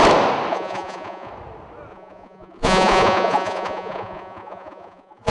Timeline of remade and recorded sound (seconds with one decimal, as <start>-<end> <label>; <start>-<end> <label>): 0.0-0.5 recorded; 0.5-1.3 remade; 1.3-1.9 recorded; 1.9-5.3 remade